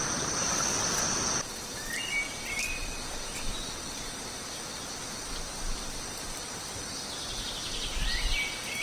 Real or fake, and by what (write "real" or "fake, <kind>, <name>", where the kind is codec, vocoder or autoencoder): real